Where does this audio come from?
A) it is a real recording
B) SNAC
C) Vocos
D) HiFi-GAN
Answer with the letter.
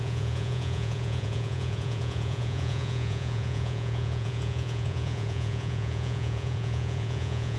C